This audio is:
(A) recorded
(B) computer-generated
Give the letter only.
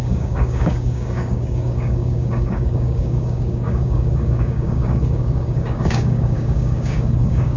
B